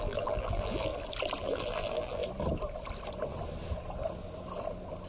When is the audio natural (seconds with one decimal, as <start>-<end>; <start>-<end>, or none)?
0.9-1.4; 2.2-5.1